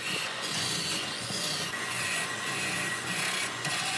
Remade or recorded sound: remade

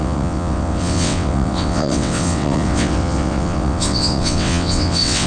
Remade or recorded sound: remade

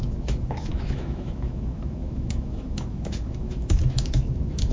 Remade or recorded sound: remade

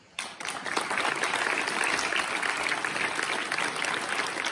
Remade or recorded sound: recorded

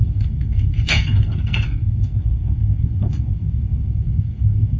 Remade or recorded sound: remade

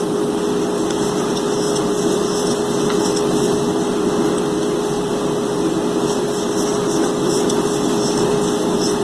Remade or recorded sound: recorded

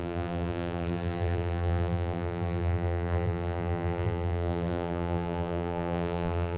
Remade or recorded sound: remade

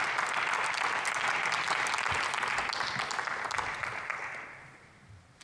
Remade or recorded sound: recorded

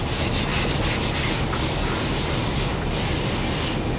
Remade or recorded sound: recorded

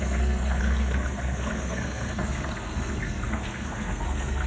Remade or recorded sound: remade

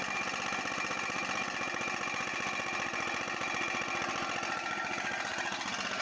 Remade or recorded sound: recorded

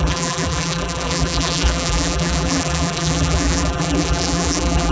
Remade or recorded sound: remade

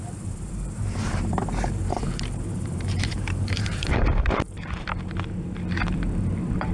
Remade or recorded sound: remade